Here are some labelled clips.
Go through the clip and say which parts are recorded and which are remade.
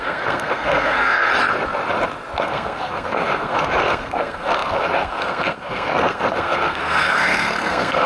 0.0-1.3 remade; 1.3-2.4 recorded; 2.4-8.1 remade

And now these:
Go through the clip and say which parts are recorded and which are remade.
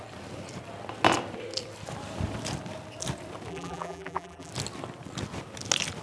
0.0-3.5 recorded; 3.5-4.5 remade; 4.5-6.0 recorded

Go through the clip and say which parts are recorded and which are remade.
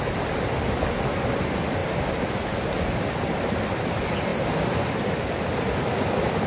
0.0-6.5 recorded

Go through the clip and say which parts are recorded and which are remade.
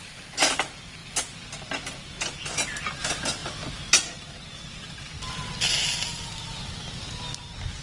0.0-7.8 recorded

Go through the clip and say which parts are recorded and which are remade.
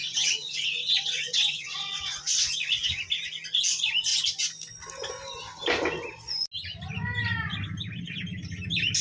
0.0-3.0 remade; 3.0-9.0 recorded